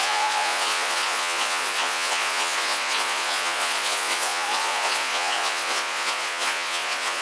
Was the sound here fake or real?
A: fake